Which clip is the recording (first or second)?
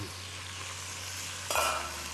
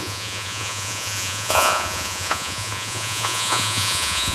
first